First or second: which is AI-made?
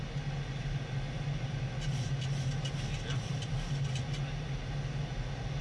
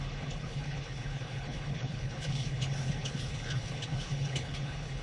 second